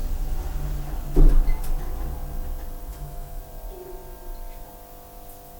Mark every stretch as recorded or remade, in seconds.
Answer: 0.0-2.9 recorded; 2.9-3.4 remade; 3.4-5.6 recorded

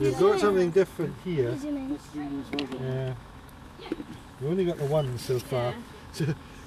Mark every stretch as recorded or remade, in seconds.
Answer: 0.0-0.8 recorded; 0.8-4.8 remade; 4.8-5.7 recorded; 5.7-6.7 remade

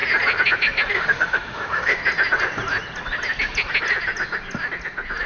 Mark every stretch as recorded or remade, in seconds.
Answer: 0.0-0.9 recorded; 0.9-2.0 remade; 2.0-5.3 recorded

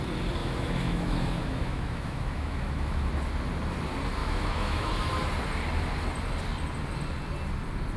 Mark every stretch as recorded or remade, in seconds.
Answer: 0.0-0.4 recorded; 0.4-3.1 remade; 3.1-4.2 recorded; 4.2-4.9 remade; 4.9-8.0 recorded

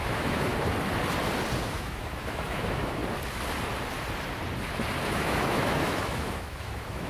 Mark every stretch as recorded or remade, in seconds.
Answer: 0.0-0.5 remade; 0.5-1.7 recorded; 1.7-3.0 remade; 3.0-5.1 recorded; 5.1-7.1 remade

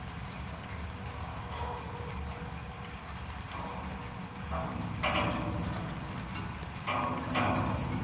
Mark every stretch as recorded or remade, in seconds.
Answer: 0.0-1.3 recorded; 1.3-1.9 remade; 1.9-8.0 recorded